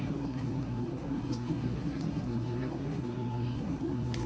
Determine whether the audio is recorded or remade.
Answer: remade